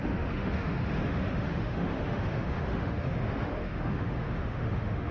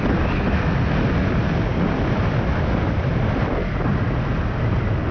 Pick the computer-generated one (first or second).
first